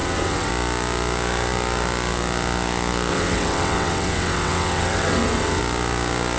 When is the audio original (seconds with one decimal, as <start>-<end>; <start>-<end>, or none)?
0.5-3.1; 5.6-6.4